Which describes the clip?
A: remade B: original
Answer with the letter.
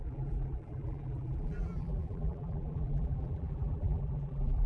A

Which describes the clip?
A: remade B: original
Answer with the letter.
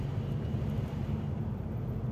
B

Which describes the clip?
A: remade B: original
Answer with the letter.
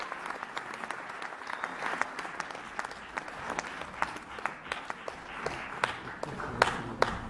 B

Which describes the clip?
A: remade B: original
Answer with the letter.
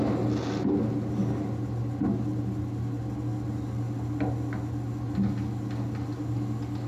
B